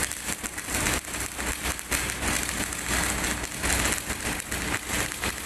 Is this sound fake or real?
real